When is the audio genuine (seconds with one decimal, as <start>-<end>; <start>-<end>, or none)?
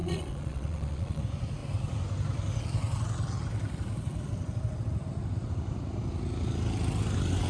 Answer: 1.2-7.5